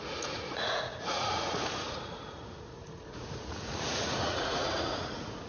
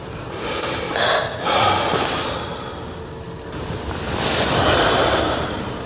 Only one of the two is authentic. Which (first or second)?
second